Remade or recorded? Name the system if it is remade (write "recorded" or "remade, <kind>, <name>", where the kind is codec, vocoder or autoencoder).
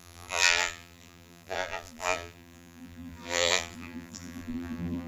remade, vocoder, BigVGAN v2